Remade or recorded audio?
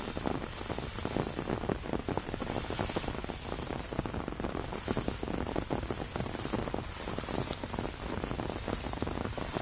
recorded